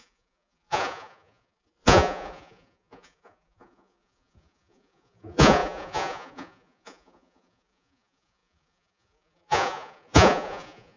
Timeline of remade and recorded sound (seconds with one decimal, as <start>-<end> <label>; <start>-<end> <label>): 0.0-11.0 remade